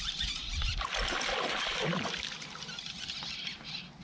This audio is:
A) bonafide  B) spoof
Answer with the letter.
A